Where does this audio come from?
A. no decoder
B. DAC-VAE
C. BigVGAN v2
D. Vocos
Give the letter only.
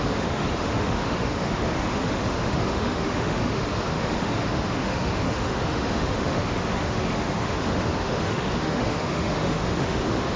B